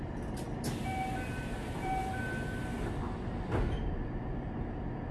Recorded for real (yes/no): yes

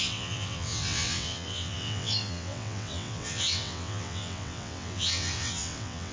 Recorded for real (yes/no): no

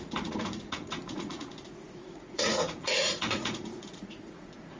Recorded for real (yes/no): no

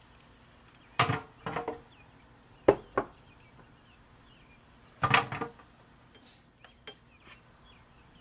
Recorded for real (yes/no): yes